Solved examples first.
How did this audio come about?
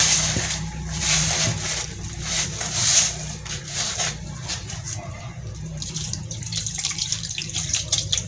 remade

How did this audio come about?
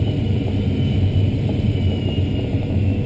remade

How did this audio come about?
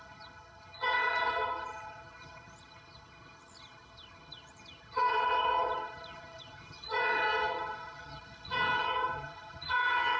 remade